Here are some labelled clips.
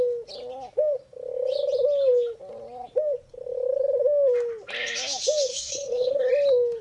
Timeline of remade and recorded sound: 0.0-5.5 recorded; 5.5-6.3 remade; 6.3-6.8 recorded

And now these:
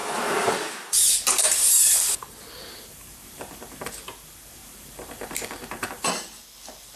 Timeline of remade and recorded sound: 0.0-3.9 remade; 3.9-4.6 recorded; 4.6-6.1 remade; 6.1-7.0 recorded

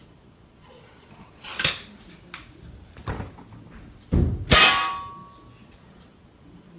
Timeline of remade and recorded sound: 0.0-1.5 remade; 1.5-5.6 recorded; 5.6-6.8 remade

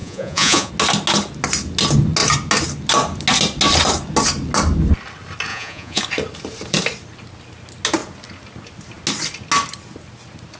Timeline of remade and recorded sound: 0.0-0.7 remade; 0.7-5.5 recorded; 5.5-6.0 remade; 6.0-10.6 recorded

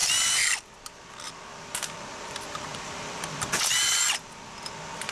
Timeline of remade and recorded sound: 0.0-5.1 remade